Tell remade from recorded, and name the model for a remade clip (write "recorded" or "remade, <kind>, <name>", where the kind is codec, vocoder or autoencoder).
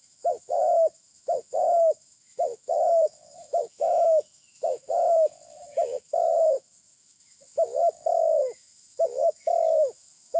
remade, autoencoder, DAC-VAE